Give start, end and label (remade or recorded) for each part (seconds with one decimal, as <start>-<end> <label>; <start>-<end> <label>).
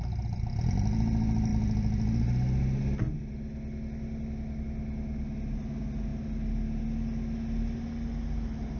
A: 0.0-8.8 recorded